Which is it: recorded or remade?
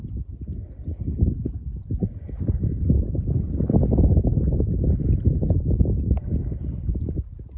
recorded